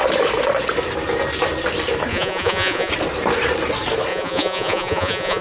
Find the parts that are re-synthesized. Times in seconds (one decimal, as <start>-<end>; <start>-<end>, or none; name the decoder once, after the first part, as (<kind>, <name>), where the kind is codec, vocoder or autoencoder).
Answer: 2.1-2.9 (vocoder, Vocos); 4.1-5.4